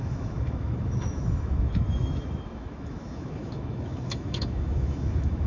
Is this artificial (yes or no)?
yes